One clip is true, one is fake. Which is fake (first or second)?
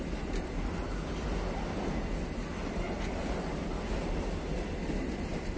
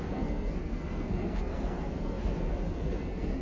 second